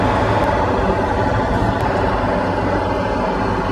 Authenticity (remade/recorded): recorded